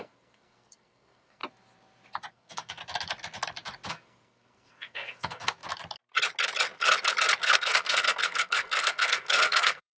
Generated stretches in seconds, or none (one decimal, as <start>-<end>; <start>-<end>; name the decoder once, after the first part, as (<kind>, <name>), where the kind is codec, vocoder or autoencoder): 0.0-1.4 (codec, SNAC); 2.3-2.8; 3.9-5.6; 7.4-10.0